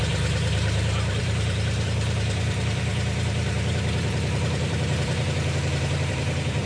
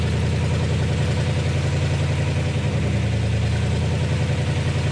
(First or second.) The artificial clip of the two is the first